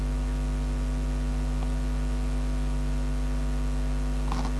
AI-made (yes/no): no